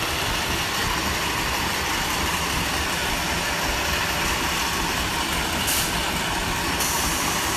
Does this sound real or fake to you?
real